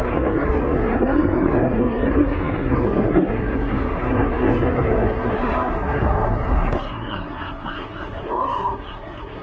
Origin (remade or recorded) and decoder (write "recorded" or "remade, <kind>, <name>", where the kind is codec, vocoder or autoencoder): remade, codec, SNAC